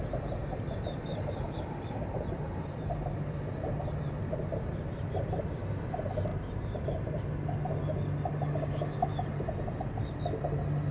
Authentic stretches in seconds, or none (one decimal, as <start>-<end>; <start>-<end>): 0.0-0.4; 3.1-4.5; 5.6-6.3; 7.2-10.9